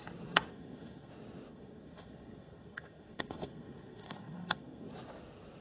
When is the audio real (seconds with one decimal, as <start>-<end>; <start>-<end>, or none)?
0.0-0.5; 1.1-1.5; 4.9-5.6